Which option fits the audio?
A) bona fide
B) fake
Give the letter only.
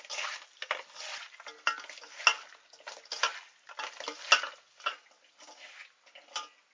A